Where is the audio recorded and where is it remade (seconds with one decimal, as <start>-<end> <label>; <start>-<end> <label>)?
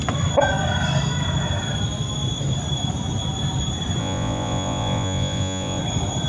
0.0-4.0 recorded; 4.0-5.8 remade; 5.8-6.3 recorded